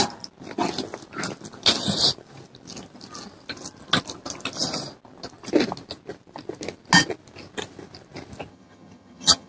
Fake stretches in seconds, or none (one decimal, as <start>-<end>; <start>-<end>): 8.5-9.5